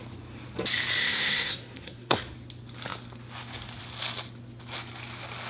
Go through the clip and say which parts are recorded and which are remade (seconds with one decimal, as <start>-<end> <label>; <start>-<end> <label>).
0.0-1.0 recorded; 1.0-2.2 remade; 2.2-5.5 recorded